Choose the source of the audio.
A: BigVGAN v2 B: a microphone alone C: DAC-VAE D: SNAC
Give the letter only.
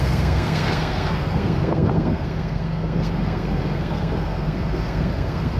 D